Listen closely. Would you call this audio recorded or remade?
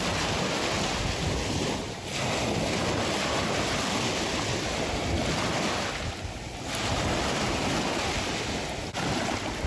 recorded